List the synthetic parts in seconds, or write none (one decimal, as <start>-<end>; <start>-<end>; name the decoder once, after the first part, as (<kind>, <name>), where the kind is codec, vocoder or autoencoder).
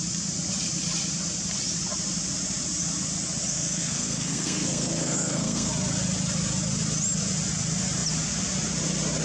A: 3.5-5.7 (codec, SNAC)